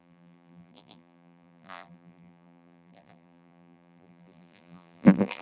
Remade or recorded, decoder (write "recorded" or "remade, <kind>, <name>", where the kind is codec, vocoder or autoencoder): remade, vocoder, BigVGAN v2